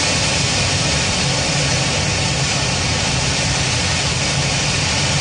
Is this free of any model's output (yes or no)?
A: yes